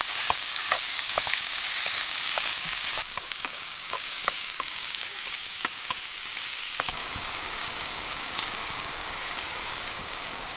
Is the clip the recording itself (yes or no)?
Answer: no